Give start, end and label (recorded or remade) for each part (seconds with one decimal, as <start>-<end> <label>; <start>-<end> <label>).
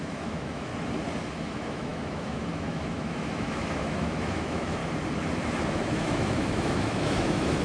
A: 0.0-0.7 remade; 0.7-1.3 recorded; 1.3-4.8 remade; 4.8-5.6 recorded; 5.6-7.6 remade